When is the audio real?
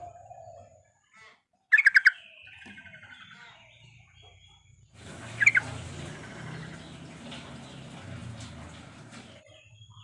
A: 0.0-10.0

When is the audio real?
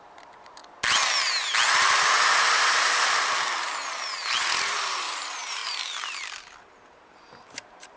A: 0.6-5.0; 5.6-6.6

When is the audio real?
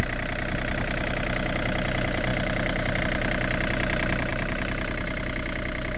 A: 0.0-2.3; 3.0-4.3; 5.2-6.0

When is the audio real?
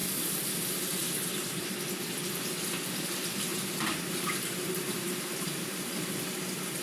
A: 1.7-3.5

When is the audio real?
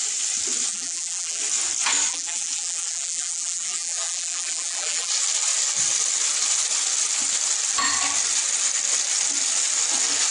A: 0.0-0.7; 1.4-2.1; 5.1-10.3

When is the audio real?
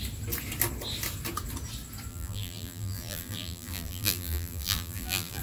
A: 0.0-2.1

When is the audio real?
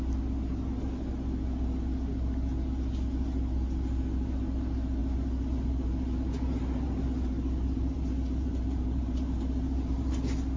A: 0.0-5.0; 10.1-10.6